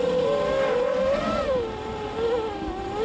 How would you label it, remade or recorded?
recorded